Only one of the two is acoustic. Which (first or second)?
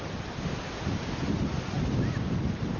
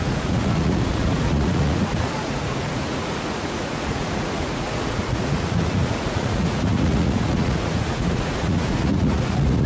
first